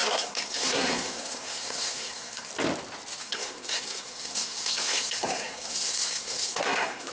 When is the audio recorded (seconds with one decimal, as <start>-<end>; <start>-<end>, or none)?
2.5-3.2